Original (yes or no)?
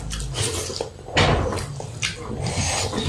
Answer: yes